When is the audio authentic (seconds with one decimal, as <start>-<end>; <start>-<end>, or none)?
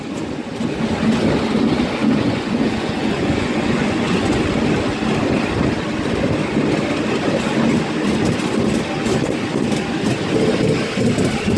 0.0-2.0; 4.4-11.6